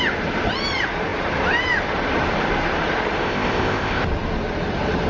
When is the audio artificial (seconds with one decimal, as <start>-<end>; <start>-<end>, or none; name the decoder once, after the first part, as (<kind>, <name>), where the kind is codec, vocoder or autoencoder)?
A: 3.2-4.0 (codec, ZipCodec)